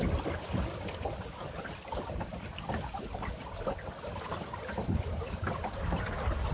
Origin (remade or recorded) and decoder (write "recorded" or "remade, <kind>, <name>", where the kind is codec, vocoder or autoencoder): remade, vocoder, BigVGAN v2